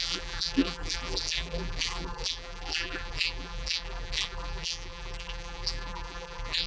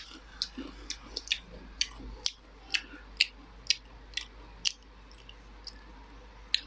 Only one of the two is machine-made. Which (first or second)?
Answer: first